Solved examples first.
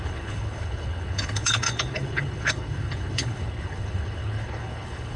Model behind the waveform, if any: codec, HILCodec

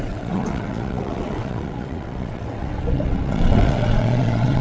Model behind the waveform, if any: vocoder, WaveNeXt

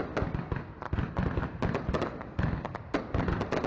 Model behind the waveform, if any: none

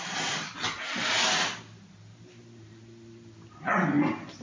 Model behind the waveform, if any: none